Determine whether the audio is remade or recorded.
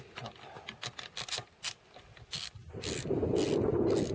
recorded